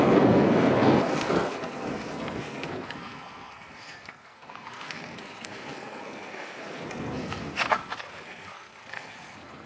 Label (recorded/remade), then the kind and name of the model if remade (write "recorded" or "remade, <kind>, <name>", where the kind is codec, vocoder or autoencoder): remade, codec, SNAC